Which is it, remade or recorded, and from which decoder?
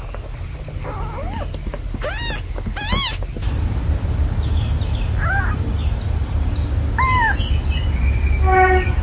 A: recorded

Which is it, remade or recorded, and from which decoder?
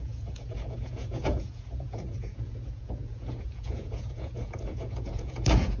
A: remade, vocoder, Vocos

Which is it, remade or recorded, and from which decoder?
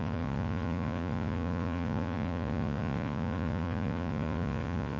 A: remade, vocoder, Vocos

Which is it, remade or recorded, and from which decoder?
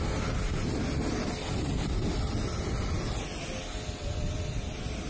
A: recorded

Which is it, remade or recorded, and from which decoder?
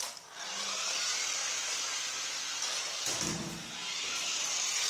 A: recorded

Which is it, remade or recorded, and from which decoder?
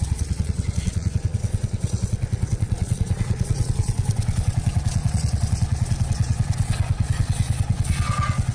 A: remade, vocoder, Vocos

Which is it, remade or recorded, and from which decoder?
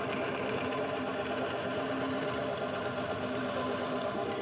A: recorded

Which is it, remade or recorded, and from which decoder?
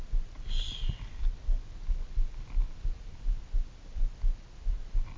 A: recorded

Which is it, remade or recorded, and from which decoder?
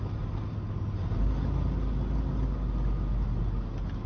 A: recorded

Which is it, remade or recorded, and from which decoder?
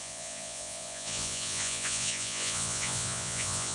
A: remade, vocoder, Vocos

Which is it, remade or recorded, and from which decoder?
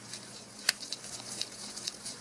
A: remade, vocoder, Vocos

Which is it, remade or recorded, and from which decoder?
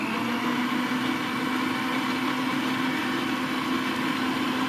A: recorded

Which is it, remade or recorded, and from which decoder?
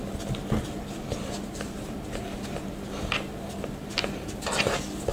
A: recorded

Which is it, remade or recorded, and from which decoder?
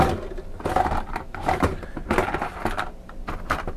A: recorded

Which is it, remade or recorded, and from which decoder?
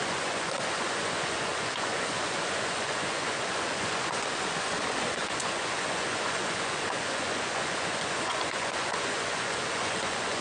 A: remade, vocoder, Vocos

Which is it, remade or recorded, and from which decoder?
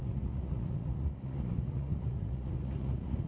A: remade, vocoder, Vocos